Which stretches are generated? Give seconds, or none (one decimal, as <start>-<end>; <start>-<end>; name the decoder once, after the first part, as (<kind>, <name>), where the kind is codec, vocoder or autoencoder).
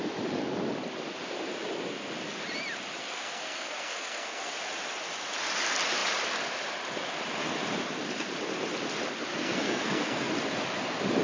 3.0-4.5 (codec, SNAC); 9.3-10.3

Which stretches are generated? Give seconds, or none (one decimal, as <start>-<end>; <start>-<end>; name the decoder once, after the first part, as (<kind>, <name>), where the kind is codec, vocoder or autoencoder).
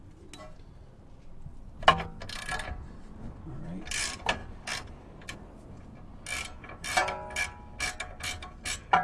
none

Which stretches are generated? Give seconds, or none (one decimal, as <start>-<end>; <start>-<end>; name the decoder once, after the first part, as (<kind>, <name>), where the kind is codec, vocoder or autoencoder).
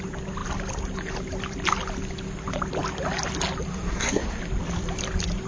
3.7-4.4 (codec, SNAC)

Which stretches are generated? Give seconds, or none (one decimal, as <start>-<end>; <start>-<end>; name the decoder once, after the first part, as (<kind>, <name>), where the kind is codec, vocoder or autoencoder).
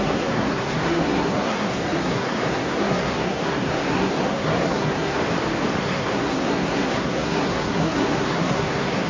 0.0-5.2 (codec, SNAC); 5.8-9.1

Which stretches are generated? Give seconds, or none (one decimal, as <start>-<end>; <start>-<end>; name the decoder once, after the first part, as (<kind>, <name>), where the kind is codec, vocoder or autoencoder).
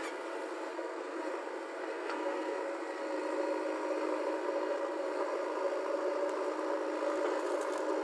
0.7-1.2 (codec, SNAC); 1.9-2.6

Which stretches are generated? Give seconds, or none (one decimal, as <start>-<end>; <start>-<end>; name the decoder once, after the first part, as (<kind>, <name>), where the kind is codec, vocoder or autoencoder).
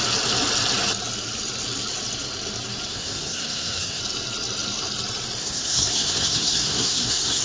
2.9-4.0 (codec, SNAC); 5.4-7.4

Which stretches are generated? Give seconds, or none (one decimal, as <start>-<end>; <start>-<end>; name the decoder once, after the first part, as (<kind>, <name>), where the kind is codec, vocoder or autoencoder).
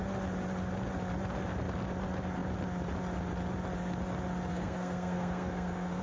4.5-6.0 (codec, SNAC)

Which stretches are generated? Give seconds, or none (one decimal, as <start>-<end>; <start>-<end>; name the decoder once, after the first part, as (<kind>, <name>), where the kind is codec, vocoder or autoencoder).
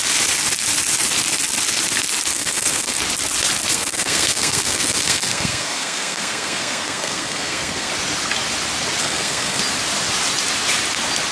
2.3-3.0 (codec, SNAC); 3.7-7.9; 9.0-9.6